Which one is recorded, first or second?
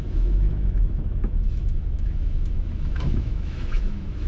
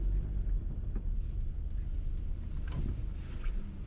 second